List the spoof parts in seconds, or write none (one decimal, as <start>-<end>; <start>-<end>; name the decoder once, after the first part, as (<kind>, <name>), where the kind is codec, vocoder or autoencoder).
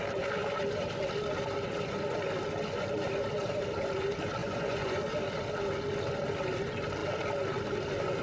4.4-5.0 (vocoder, Vocos)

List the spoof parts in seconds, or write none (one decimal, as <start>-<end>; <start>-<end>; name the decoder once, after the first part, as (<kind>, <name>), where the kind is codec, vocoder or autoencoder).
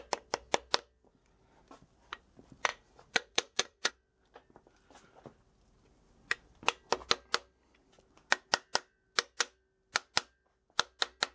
2.7-3.9 (vocoder, Vocos)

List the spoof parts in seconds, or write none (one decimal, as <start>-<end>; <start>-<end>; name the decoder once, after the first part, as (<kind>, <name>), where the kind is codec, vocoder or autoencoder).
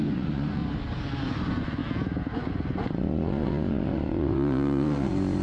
0.0-0.6 (vocoder, Vocos); 1.3-1.8; 2.5-5.4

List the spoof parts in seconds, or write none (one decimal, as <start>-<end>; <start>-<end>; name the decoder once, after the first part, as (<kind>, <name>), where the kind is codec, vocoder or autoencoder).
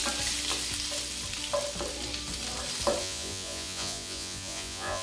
3.0-5.0 (vocoder, Vocos)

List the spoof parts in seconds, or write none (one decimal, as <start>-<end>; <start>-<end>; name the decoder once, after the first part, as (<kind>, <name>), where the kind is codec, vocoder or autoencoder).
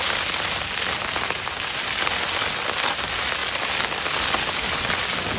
none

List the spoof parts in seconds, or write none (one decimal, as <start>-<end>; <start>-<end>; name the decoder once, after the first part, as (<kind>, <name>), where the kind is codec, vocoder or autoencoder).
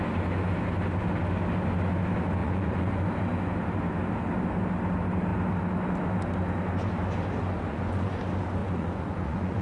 2.4-3.0 (vocoder, Vocos); 7.7-8.2; 8.6-9.6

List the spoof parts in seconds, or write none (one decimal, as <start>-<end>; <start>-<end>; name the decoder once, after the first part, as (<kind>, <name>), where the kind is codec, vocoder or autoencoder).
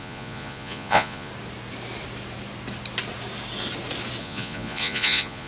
0.0-1.3 (vocoder, Vocos); 4.2-5.5